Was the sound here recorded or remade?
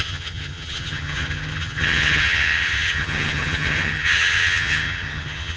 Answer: remade